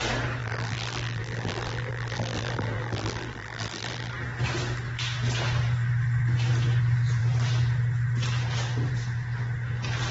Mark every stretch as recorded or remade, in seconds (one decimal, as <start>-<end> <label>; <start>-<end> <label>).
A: 0.0-0.4 recorded; 0.4-4.1 remade; 4.1-10.1 recorded